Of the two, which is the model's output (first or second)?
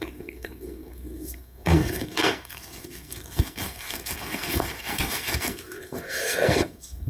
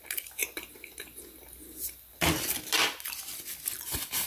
first